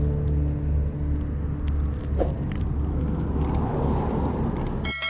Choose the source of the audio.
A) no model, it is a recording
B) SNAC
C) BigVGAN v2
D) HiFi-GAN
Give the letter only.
A